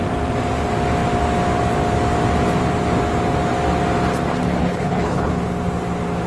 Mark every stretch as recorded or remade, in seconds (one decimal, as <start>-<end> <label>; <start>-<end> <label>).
0.0-4.6 recorded; 4.6-5.3 remade; 5.3-6.3 recorded